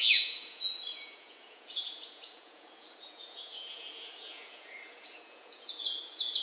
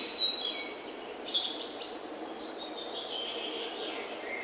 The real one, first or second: second